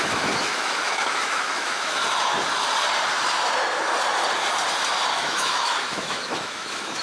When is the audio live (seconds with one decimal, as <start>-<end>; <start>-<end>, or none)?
2.0-5.1